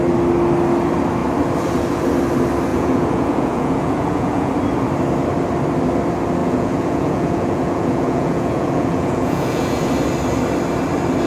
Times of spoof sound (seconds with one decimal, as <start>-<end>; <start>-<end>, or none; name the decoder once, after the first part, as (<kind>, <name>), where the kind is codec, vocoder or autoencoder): 2.7-4.5 (vocoder, Vocos); 6.4-9.9